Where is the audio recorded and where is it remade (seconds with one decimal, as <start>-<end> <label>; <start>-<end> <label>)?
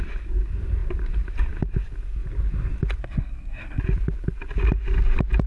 0.0-3.0 recorded; 3.0-3.8 remade; 3.8-5.5 recorded